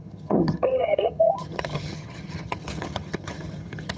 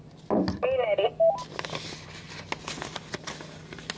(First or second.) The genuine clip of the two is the second